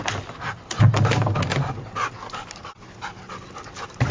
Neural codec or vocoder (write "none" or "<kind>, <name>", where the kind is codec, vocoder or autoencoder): none